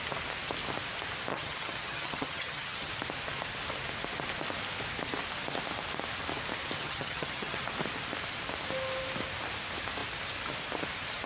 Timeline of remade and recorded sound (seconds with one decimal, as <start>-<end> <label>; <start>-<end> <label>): 0.0-1.3 recorded; 1.3-2.9 remade; 2.9-6.8 recorded; 6.8-7.6 remade; 7.6-11.3 recorded